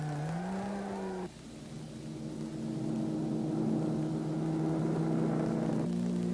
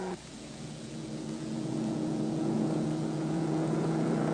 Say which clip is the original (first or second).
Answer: first